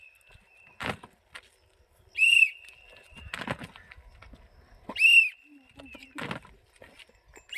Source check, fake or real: real